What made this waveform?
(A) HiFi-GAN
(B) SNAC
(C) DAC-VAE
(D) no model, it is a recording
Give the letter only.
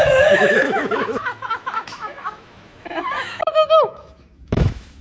C